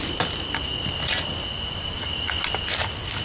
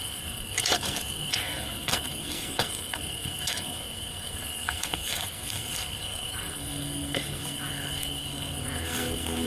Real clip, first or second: first